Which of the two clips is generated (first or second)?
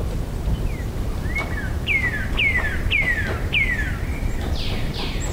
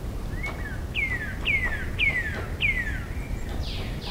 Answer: first